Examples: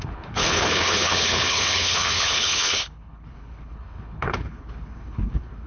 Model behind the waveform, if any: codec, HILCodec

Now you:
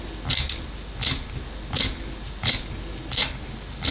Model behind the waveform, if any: none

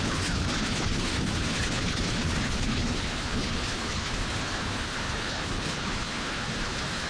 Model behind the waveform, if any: codec, HILCodec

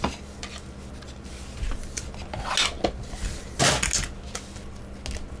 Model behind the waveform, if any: none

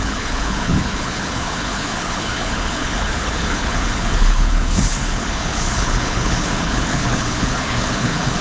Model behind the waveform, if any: codec, HILCodec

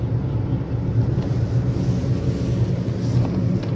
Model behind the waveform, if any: none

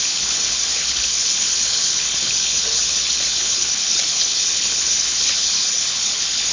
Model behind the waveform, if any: codec, HILCodec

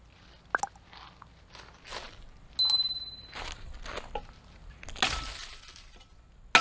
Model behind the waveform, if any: none